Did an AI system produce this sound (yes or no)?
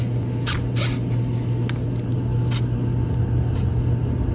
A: no